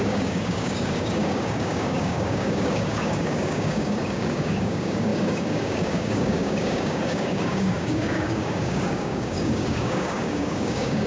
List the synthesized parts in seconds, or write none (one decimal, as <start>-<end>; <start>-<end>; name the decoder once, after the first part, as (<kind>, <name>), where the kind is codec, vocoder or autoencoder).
0.0-11.1 (codec, DAC)